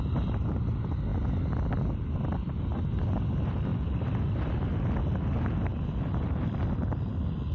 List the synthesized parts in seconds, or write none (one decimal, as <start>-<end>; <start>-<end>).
3.7-4.5; 5.7-7.1